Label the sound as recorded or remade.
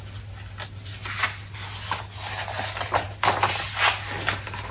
recorded